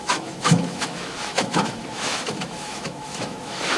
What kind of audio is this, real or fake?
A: fake